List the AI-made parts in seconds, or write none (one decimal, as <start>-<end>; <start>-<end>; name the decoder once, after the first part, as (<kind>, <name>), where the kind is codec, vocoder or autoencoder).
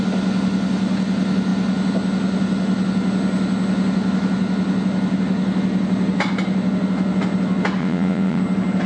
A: 7.8-8.4 (vocoder, WaveNeXt)